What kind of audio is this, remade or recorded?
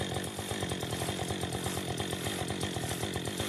recorded